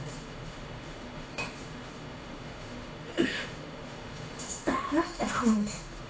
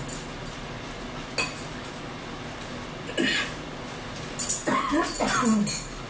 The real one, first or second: second